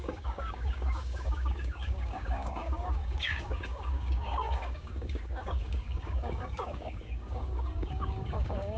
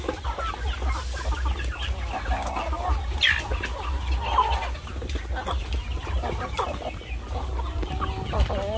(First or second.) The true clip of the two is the second